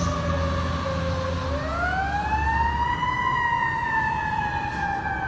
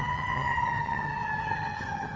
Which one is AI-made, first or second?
second